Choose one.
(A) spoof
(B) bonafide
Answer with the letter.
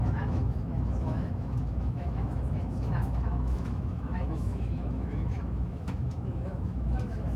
A